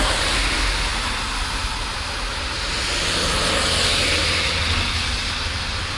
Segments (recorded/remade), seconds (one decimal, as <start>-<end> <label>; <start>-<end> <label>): 0.0-6.0 recorded